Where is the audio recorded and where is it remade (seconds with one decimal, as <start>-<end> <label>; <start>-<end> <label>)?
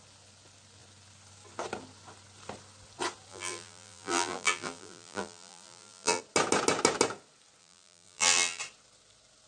0.0-3.3 recorded; 3.3-6.2 remade; 6.2-7.6 recorded; 7.6-8.6 remade; 8.6-9.5 recorded